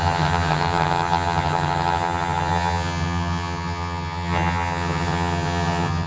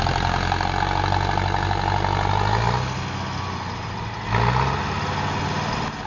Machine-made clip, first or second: first